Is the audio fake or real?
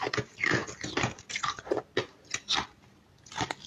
real